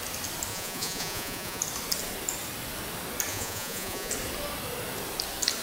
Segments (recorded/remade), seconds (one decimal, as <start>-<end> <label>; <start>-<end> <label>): 0.0-0.5 recorded; 0.5-1.6 remade; 1.6-3.3 recorded; 3.3-4.1 remade; 4.1-5.6 recorded